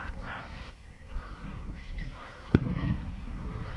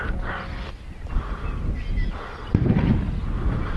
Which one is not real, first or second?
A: first